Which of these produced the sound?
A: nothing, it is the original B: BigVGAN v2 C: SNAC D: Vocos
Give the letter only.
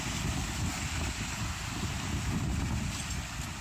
A